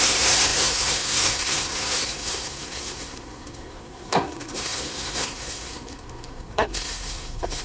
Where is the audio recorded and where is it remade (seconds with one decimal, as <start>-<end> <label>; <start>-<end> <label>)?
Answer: 0.0-7.6 remade